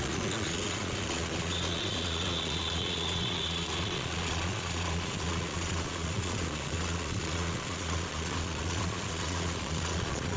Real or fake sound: fake